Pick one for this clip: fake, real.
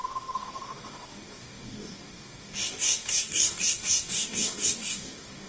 fake